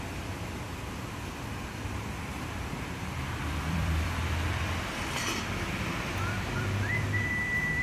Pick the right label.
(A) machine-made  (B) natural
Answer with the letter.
A